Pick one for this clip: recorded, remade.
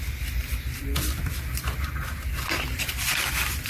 remade